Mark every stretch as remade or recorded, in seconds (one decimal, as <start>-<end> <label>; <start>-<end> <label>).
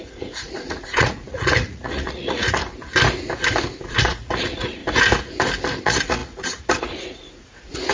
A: 0.0-2.6 remade; 2.6-3.8 recorded; 3.8-4.8 remade; 4.8-5.8 recorded; 5.8-7.9 remade